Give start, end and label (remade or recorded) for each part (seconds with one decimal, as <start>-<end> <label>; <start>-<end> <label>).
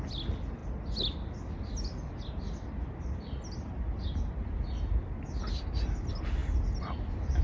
0.0-7.4 recorded